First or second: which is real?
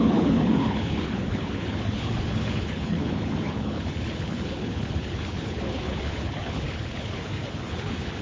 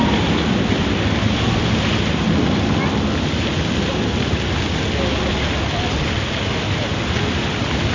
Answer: second